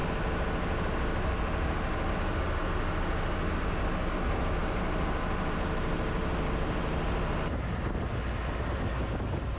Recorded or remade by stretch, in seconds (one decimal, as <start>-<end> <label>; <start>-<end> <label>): 0.0-9.6 recorded